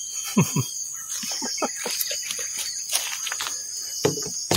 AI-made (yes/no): no